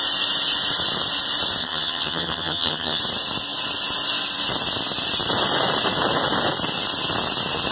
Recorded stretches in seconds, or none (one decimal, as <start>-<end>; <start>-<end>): 0.0-1.6; 3.0-7.7